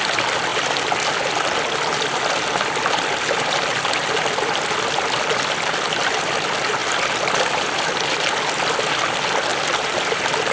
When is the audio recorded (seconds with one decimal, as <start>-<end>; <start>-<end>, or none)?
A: 0.0-10.5